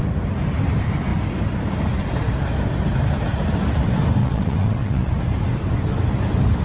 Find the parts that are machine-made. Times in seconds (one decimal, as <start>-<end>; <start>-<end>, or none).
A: 4.2-5.1